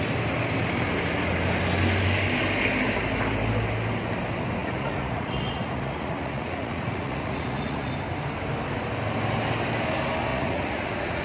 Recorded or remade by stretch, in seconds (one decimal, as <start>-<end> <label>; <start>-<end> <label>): 0.0-4.6 recorded; 4.6-7.9 remade; 7.9-10.3 recorded; 10.3-11.2 remade